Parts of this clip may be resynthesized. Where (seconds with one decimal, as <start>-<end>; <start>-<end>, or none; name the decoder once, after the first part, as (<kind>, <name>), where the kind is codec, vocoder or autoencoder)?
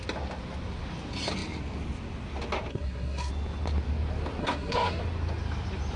2.7-3.3 (codec, SNAC); 4.4-5.0